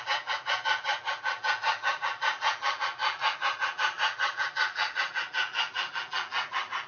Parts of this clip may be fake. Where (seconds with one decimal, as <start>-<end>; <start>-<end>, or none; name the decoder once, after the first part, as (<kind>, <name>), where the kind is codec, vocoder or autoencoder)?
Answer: 0.0-6.9 (vocoder, BigVGAN v2)